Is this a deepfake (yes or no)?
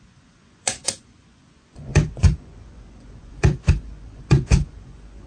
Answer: yes